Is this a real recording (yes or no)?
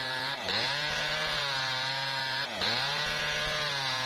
no